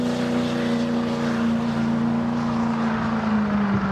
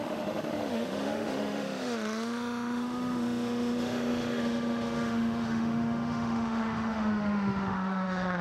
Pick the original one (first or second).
first